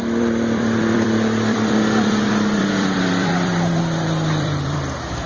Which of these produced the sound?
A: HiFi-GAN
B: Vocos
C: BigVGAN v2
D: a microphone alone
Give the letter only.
C